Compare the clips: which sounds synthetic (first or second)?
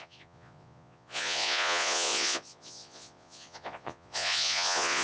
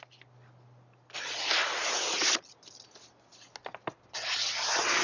first